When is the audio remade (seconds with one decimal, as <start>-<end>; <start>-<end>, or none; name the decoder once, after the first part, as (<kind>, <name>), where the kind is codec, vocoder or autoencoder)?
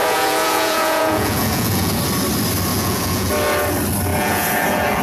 0.0-2.0 (vocoder, Vocos); 2.7-3.3; 4.1-5.0